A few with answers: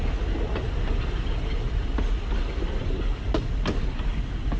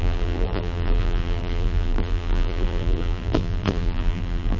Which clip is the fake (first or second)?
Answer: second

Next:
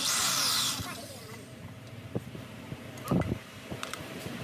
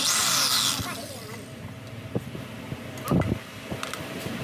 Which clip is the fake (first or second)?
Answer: first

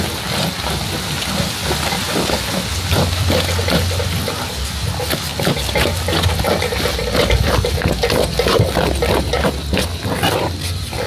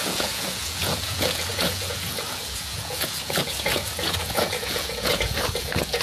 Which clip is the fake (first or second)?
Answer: second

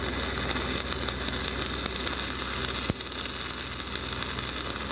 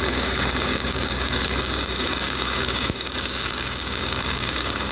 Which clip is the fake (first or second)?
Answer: second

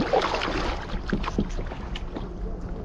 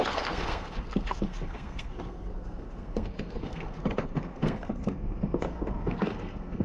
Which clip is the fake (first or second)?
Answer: second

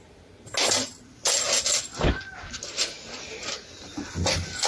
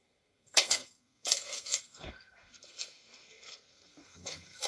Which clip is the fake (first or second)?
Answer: second